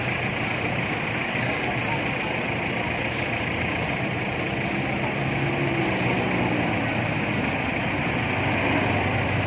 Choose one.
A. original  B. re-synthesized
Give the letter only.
A